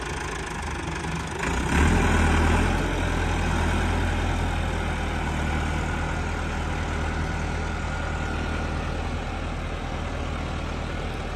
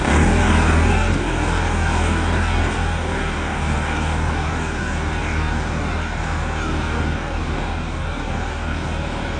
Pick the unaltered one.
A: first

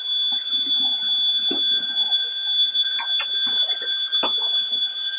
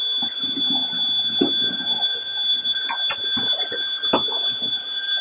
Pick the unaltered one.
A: first